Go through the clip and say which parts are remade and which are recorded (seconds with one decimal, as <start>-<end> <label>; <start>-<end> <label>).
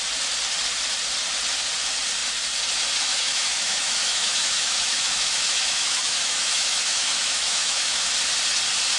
0.0-3.1 recorded; 3.1-8.1 remade; 8.1-9.0 recorded